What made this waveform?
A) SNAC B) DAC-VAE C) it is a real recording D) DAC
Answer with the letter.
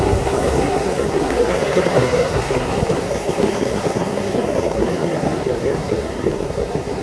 A